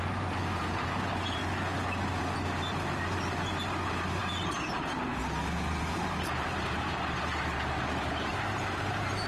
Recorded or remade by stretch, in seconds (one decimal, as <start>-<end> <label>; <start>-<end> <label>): 0.0-1.4 remade; 1.4-2.2 recorded; 2.2-5.2 remade; 5.2-5.8 recorded; 5.8-9.3 remade